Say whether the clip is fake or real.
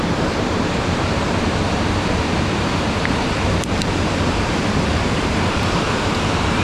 fake